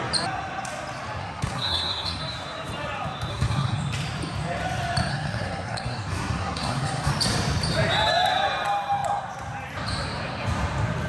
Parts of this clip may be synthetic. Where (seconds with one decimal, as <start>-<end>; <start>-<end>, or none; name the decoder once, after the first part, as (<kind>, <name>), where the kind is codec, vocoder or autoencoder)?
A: 1.2-2.2 (codec, SNAC); 3.3-3.8; 5.1-7.1